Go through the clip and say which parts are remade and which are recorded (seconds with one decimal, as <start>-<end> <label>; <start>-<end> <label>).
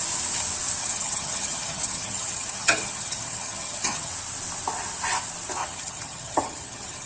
0.0-0.8 recorded; 0.8-4.1 remade; 4.1-5.6 recorded; 5.6-7.1 remade